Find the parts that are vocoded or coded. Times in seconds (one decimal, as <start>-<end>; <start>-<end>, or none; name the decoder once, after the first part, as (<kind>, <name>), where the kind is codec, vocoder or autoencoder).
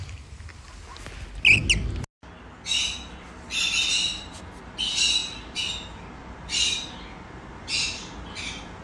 none